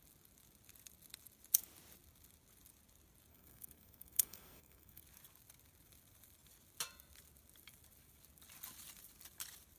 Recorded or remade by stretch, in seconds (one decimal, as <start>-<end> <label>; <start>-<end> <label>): 0.0-3.3 recorded; 3.3-5.0 remade; 5.0-9.8 recorded

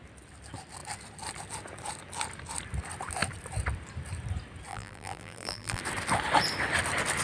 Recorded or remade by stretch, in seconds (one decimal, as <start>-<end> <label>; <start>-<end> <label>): 0.0-4.7 recorded; 4.7-5.8 remade; 5.8-7.2 recorded

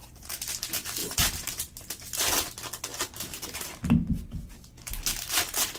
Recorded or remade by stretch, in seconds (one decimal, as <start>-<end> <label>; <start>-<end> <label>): 0.0-0.5 remade; 0.5-1.0 recorded; 1.0-1.9 remade; 1.9-2.9 recorded; 2.9-3.5 remade; 3.5-5.8 recorded

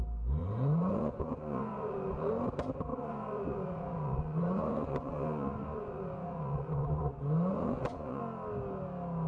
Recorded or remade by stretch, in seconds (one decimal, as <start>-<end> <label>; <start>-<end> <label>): 0.0-0.4 recorded; 0.4-2.3 remade; 2.3-2.9 recorded; 2.9-8.2 remade; 8.2-9.3 recorded

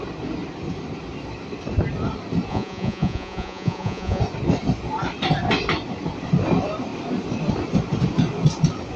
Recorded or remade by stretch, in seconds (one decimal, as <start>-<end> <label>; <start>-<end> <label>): 0.0-2.5 recorded; 2.5-4.2 remade; 4.2-9.0 recorded

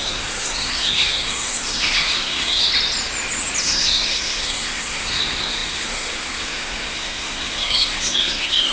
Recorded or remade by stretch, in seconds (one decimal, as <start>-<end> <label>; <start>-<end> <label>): 0.0-2.7 remade; 2.7-3.6 recorded; 3.6-8.7 remade